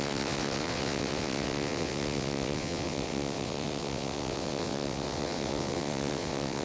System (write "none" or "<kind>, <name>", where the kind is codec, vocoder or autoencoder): vocoder, WaveNeXt